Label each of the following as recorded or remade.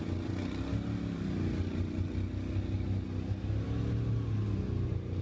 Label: recorded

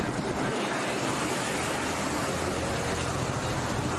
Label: remade